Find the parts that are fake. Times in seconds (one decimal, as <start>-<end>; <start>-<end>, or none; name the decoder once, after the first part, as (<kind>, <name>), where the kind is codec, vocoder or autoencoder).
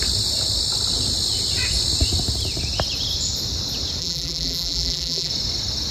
4.0-5.3 (vocoder, BigVGAN v2)